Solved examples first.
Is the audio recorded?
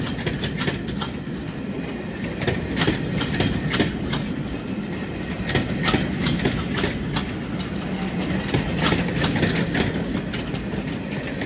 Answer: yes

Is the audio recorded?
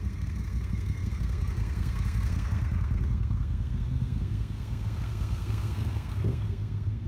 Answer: no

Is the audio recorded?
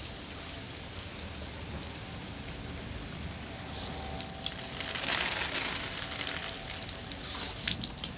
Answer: yes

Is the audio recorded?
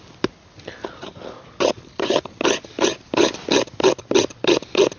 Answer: yes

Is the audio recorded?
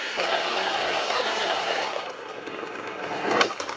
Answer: no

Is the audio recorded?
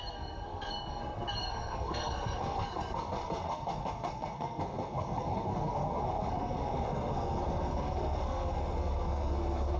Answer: no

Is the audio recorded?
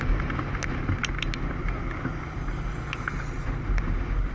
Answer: yes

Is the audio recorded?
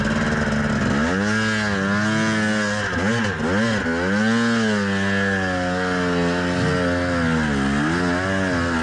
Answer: yes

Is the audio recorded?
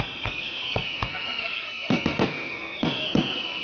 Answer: no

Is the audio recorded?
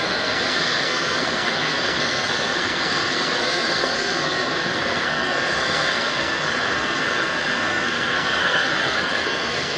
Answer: no